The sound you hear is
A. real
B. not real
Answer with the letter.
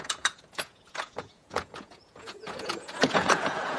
B